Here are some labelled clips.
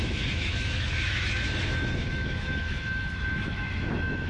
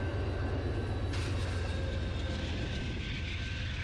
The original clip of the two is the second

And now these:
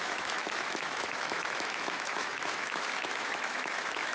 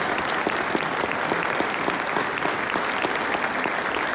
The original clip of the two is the second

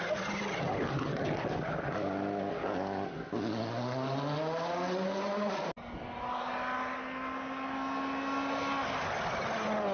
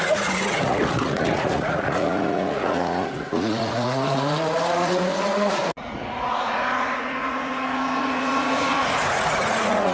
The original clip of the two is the first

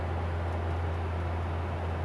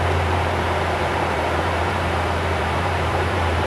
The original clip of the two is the first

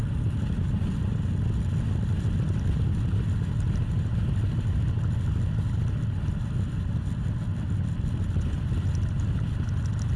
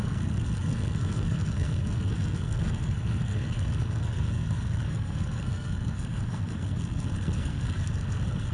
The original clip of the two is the first